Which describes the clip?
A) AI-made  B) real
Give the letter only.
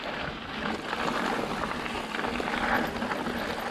B